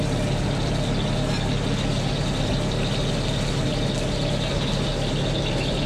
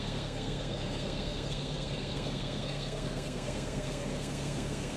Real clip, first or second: first